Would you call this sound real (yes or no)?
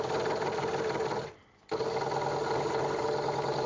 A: yes